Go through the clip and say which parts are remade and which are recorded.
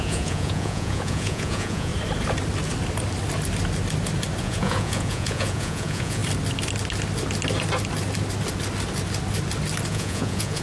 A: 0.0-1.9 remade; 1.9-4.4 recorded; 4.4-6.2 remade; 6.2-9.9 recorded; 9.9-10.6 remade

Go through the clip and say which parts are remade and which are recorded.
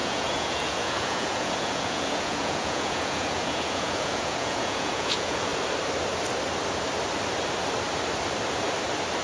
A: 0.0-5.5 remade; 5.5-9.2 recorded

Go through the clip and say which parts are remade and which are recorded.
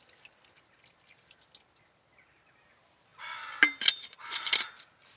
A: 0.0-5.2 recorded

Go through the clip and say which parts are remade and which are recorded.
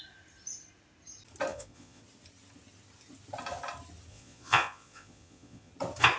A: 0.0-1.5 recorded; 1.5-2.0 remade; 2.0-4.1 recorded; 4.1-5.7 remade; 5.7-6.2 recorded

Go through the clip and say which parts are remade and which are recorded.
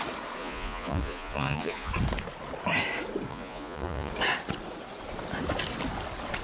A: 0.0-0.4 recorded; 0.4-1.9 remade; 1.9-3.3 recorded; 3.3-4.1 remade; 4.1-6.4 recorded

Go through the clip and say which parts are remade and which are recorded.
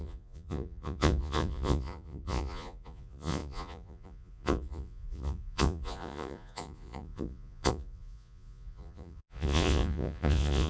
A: 0.0-10.7 remade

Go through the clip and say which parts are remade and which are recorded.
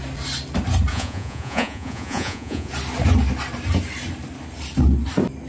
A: 0.0-0.9 recorded; 0.9-2.7 remade; 2.7-5.5 recorded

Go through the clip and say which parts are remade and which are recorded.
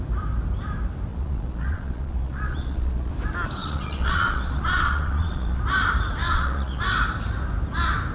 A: 0.0-1.1 recorded; 1.1-3.1 remade; 3.1-3.6 recorded; 3.6-5.6 remade; 5.6-6.2 recorded; 6.2-6.8 remade; 6.8-8.1 recorded